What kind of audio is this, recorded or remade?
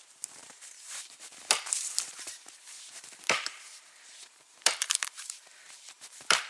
remade